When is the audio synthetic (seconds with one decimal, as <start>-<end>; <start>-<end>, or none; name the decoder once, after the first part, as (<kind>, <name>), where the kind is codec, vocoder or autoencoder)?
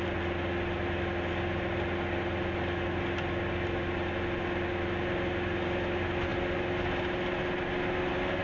none